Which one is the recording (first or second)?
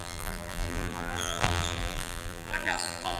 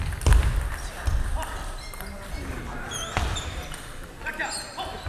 second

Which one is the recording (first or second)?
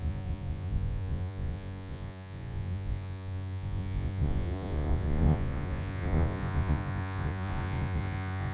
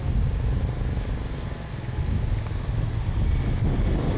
second